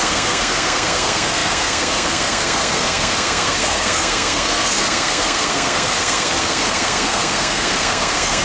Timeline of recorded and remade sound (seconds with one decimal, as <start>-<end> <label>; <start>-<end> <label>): 0.0-8.4 remade

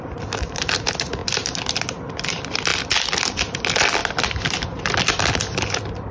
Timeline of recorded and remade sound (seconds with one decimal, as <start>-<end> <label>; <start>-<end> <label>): 0.0-6.1 recorded

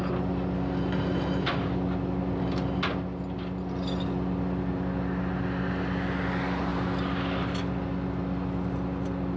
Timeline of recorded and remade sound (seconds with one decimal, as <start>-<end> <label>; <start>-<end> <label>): 0.0-9.4 recorded

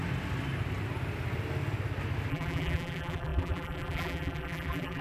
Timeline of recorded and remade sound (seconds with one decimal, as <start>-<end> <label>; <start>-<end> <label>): 0.0-2.3 recorded; 2.3-5.0 remade

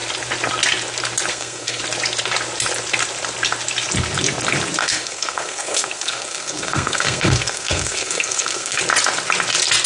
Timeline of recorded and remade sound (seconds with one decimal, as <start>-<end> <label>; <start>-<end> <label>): 0.0-1.3 recorded; 1.3-1.8 remade; 1.8-4.8 recorded; 4.8-8.8 remade; 8.8-9.9 recorded

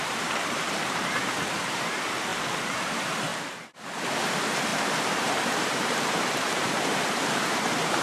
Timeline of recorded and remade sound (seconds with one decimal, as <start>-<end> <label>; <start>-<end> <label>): 0.0-2.3 remade; 2.3-2.9 recorded; 2.9-3.3 remade; 3.3-4.2 recorded; 4.2-8.0 remade